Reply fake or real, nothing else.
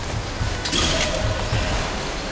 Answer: real